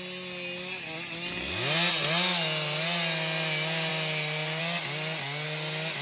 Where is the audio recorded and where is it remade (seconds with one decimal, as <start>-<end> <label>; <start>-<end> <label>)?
0.0-6.0 recorded